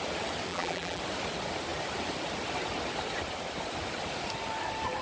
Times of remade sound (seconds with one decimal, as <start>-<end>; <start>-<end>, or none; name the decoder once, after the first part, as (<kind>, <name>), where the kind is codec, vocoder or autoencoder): 0.5-1.0 (vocoder, BigVGAN v2)